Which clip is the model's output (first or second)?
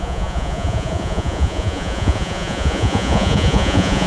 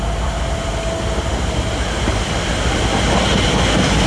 first